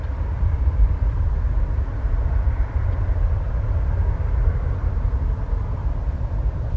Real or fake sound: fake